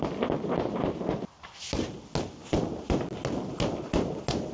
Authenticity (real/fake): real